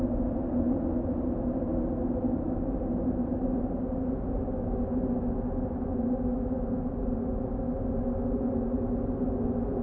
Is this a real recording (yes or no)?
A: yes